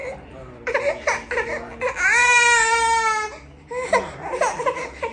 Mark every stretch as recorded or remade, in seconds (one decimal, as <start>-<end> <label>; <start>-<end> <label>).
0.0-0.8 remade; 0.8-5.1 recorded